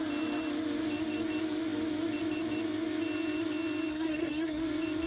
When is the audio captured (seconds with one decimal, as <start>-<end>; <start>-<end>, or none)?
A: 0.0-3.9; 4.6-5.1